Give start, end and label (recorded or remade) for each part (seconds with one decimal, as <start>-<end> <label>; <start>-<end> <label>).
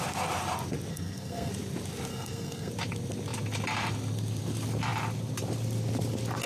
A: 0.0-0.9 recorded; 0.9-1.5 remade; 1.5-2.1 recorded; 2.1-2.7 remade; 2.7-6.5 recorded